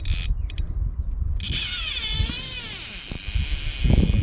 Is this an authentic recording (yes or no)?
yes